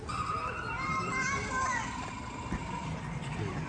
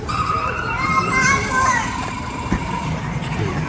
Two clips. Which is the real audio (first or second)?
first